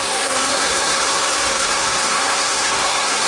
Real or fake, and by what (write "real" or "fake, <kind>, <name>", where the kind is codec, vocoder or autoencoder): fake, codec, SNAC